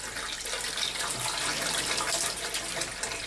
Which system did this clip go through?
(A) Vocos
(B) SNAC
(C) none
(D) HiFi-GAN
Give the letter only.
C